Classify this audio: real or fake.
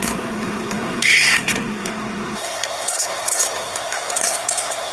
fake